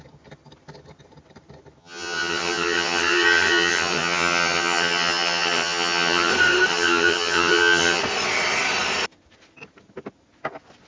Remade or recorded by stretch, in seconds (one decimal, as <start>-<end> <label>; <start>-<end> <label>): 0.0-1.8 recorded; 1.8-6.3 remade; 6.3-6.7 recorded; 6.7-8.0 remade; 8.0-10.9 recorded

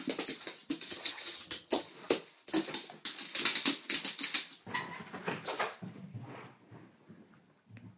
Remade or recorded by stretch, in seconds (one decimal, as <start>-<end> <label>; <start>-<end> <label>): 0.0-0.9 recorded; 0.9-1.9 remade; 1.9-8.0 recorded

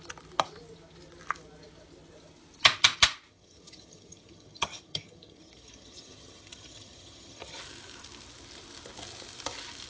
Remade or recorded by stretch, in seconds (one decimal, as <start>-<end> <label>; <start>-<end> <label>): 0.0-3.3 recorded; 3.3-7.6 remade; 7.6-9.9 recorded

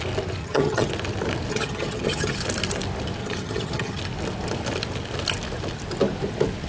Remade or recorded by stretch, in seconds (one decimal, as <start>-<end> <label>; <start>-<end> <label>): 0.0-0.4 recorded; 0.4-0.9 remade; 0.9-1.5 recorded; 1.5-2.4 remade; 2.4-3.2 recorded; 3.2-4.0 remade; 4.0-6.7 recorded

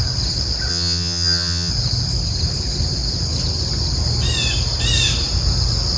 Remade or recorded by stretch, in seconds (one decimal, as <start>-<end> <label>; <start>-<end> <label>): 0.0-0.7 recorded; 0.7-1.7 remade; 1.7-6.0 recorded

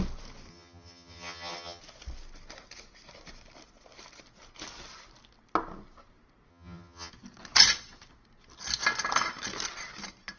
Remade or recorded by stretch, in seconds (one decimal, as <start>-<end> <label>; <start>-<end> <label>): 0.0-0.5 recorded; 0.5-1.8 remade; 1.8-6.5 recorded; 6.5-7.1 remade; 7.1-10.4 recorded

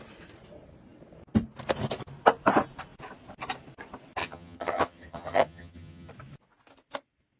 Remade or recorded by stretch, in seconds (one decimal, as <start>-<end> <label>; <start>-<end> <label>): 0.0-4.2 recorded; 4.2-6.1 remade; 6.1-7.4 recorded

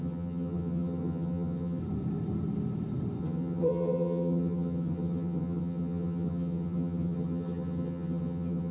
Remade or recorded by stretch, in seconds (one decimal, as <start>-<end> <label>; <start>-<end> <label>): 0.0-1.8 remade; 1.8-3.2 recorded; 3.2-8.7 remade